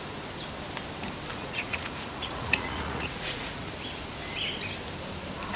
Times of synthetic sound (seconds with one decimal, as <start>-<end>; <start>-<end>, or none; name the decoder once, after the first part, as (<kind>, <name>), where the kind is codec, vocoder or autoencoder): 1.3-3.7 (vocoder, Vocos)